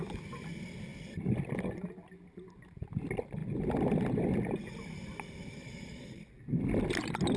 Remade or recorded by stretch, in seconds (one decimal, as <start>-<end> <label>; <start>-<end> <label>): 0.0-5.6 recorded; 5.6-6.2 remade; 6.2-7.4 recorded